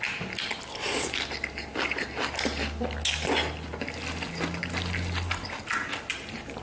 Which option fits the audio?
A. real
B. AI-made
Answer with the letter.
A